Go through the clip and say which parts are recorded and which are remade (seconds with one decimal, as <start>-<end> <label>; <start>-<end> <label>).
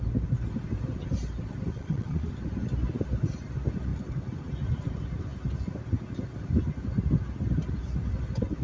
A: 0.0-1.7 recorded; 1.7-2.3 remade; 2.3-8.6 recorded